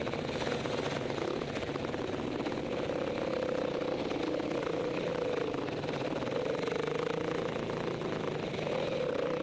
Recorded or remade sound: recorded